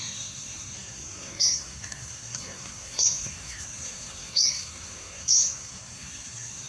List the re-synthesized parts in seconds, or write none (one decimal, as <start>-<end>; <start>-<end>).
0.0-6.7